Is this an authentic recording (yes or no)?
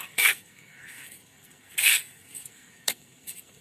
no